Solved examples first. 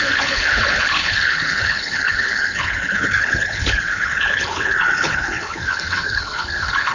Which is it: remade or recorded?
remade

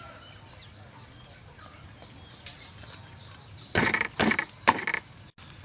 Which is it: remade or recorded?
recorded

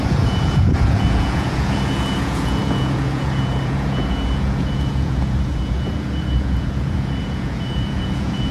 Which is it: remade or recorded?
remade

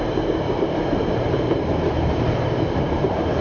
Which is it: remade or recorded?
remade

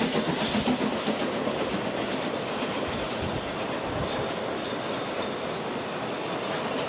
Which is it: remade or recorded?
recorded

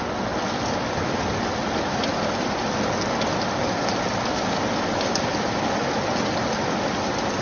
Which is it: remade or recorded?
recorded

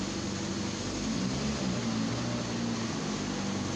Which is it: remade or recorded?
recorded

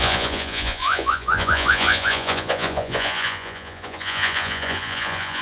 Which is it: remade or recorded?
remade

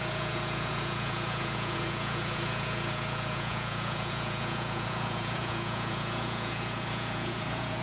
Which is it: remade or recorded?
remade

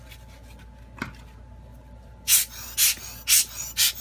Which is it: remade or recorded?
recorded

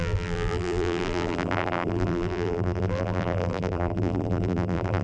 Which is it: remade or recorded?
remade